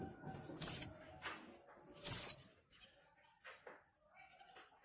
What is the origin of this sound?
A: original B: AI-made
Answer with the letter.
A